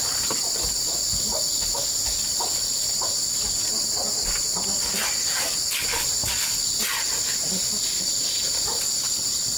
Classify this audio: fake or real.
real